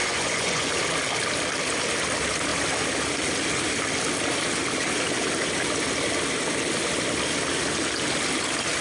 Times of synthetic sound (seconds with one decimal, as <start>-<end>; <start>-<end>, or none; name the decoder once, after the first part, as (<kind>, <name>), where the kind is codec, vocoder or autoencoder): 0.0-0.7 (vocoder, Vocos)